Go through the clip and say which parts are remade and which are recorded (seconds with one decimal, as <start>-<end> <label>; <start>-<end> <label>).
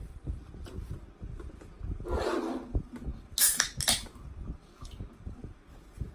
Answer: 0.0-6.1 recorded